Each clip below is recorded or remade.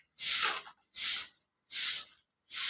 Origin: recorded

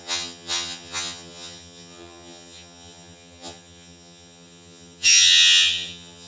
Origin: remade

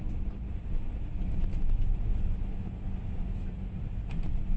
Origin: recorded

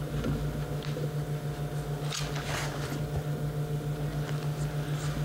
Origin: recorded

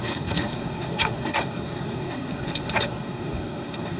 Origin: remade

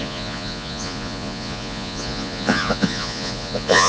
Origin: remade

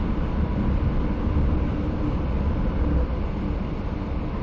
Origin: recorded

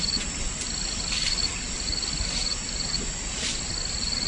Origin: recorded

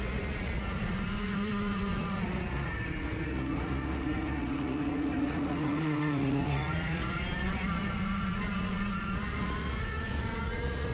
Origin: remade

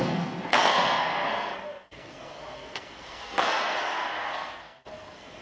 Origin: remade